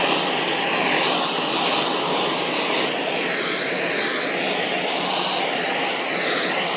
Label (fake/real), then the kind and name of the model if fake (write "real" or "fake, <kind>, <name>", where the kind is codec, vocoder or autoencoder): real